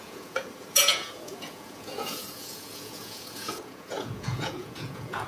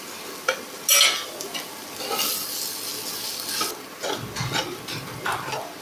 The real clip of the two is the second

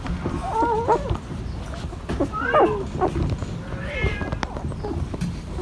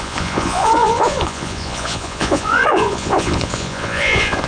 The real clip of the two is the first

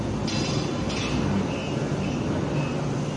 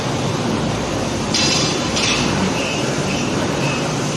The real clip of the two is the first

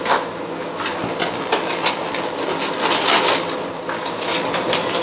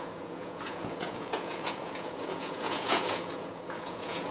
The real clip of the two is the first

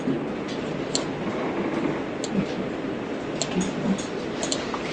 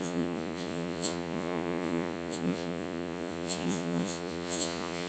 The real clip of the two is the first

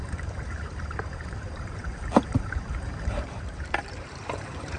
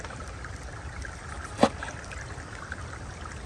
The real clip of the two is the second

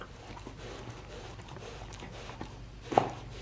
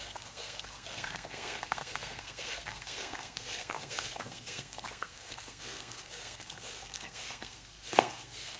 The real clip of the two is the first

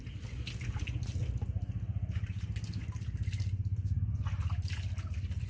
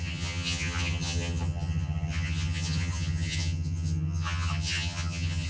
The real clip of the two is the first